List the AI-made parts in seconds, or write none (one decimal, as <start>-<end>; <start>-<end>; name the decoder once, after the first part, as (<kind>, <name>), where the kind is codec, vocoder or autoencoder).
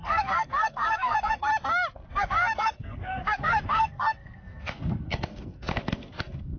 0.0-1.5 (codec, SNAC); 2.1-6.6